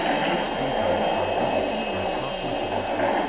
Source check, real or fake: real